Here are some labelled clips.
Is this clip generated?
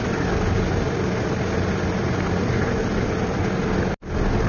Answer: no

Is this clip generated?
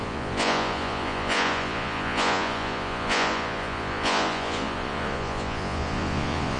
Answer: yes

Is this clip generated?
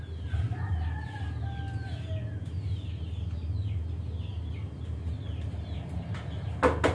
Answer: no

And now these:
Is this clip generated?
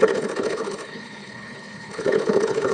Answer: yes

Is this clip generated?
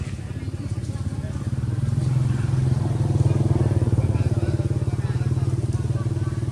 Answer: no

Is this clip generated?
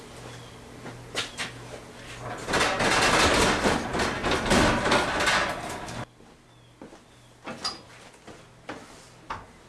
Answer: no